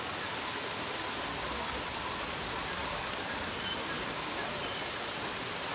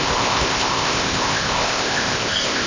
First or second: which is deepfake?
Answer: second